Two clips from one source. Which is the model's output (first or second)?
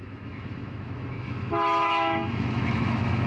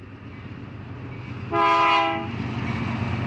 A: first